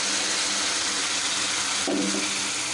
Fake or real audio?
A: real